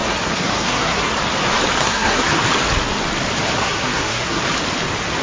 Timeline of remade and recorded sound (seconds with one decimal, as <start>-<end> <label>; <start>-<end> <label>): 0.0-1.1 remade; 1.1-1.8 recorded; 1.8-2.4 remade; 2.4-3.6 recorded; 3.6-4.4 remade; 4.4-5.2 recorded